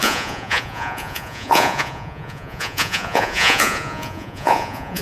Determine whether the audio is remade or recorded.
remade